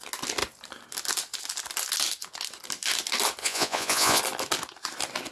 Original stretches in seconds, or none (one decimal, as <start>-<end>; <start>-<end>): 0.0-3.4; 4.2-5.3